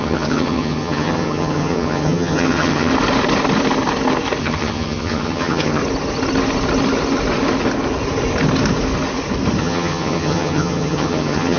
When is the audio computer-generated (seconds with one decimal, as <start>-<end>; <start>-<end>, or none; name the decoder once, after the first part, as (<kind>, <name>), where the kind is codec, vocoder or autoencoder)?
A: 0.0-2.9 (vocoder, HiFi-GAN); 4.4-5.8; 9.6-11.6